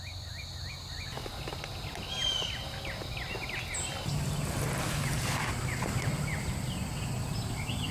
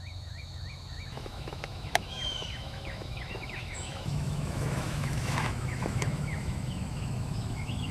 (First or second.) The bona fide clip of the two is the first